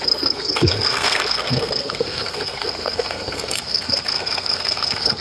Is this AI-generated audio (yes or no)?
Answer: yes